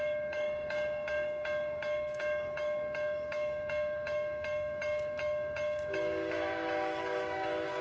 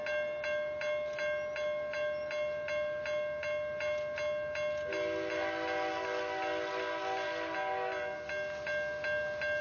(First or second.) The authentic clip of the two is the second